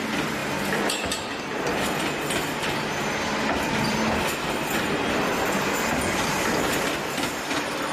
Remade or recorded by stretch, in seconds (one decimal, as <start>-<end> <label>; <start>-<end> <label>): 0.0-7.9 recorded